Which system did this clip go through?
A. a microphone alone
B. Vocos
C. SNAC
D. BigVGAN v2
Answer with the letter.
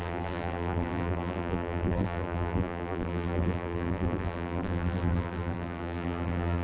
D